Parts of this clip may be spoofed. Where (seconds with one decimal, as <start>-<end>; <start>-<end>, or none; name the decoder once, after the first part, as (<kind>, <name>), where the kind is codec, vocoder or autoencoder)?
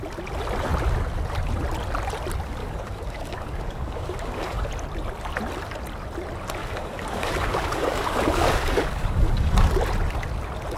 2.6-4.7 (codec, DAC); 6.6-9.7